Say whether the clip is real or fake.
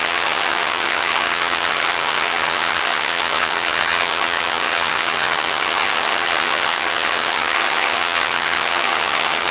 fake